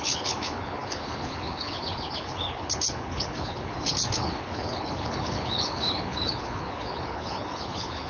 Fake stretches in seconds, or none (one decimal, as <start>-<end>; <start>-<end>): 0.0-8.1

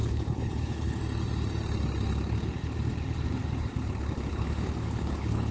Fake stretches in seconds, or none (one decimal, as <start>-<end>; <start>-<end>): 0.0-1.0; 4.3-5.5

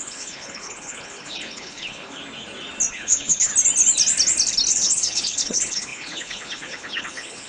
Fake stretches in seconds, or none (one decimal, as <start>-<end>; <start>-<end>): 0.0-2.2; 2.9-3.5; 4.7-7.5

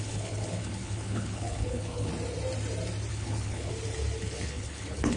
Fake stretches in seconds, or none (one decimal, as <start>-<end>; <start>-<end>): 0.0-2.1; 3.1-3.7; 4.2-5.2

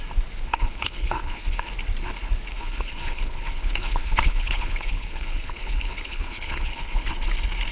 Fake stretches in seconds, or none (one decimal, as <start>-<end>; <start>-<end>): 0.5-1.7; 2.5-7.1

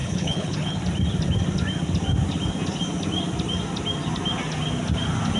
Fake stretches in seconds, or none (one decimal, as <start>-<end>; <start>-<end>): 0.0-0.8

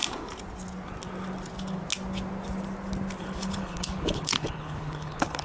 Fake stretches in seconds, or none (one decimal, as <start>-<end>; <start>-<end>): 3.2-5.4

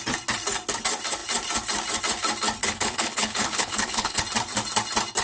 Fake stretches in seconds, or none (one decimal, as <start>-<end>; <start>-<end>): 2.6-4.2